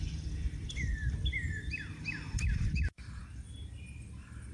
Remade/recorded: remade